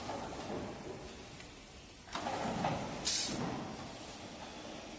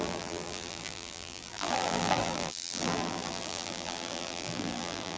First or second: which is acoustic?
first